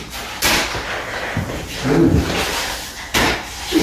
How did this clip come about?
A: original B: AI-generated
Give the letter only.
A